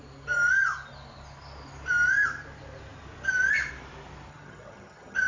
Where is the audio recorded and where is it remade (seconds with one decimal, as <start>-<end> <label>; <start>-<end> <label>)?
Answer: 0.0-4.3 recorded; 4.3-5.3 remade